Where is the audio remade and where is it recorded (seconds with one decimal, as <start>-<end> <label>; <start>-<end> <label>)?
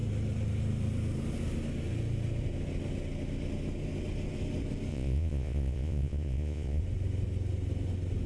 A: 0.0-4.9 recorded; 4.9-6.8 remade; 6.8-8.3 recorded